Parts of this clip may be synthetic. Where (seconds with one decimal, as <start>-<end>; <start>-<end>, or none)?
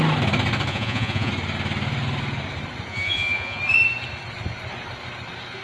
0.7-1.3; 2.9-3.6